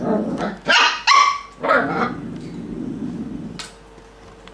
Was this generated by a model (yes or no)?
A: no